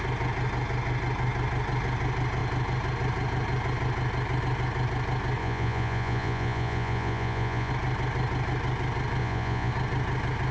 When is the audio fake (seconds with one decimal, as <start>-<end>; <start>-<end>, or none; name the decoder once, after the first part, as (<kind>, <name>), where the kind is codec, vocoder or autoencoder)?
5.4-7.7 (vocoder, Vocos); 9.2-9.7